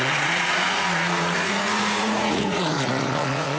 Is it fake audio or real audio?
fake